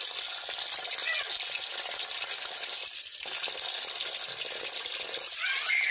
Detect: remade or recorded recorded